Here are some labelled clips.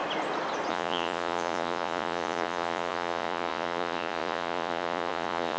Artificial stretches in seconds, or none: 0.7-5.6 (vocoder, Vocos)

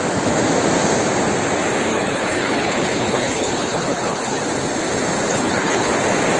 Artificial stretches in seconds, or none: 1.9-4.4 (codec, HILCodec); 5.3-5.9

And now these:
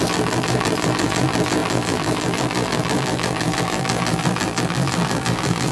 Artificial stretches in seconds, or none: 0.0-5.7 (vocoder, BigVGAN v2)

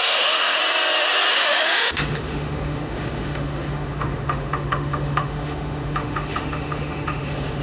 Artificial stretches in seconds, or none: 0.0-0.6 (autoencoder, DAC-VAE); 1.3-7.6